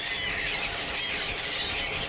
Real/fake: real